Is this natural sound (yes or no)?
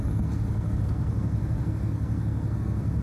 no